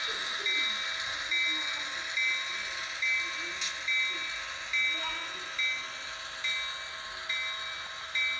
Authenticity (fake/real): real